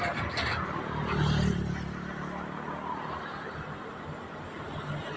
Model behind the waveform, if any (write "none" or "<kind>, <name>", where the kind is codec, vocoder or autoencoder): none